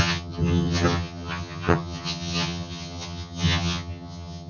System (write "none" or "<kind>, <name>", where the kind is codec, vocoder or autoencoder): vocoder, HiFi-GAN